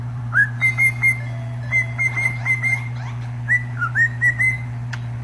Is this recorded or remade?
remade